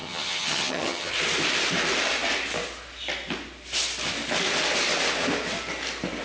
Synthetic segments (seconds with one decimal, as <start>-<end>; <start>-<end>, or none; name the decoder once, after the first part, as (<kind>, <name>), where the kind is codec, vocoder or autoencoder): 0.0-1.1 (vocoder, HiFi-GAN)